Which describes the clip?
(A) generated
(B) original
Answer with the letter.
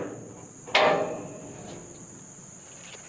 B